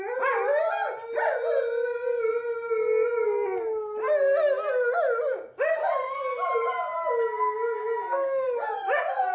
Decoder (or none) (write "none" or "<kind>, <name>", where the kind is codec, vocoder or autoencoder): none